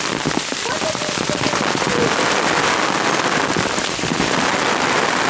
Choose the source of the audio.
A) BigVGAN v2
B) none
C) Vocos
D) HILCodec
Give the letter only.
A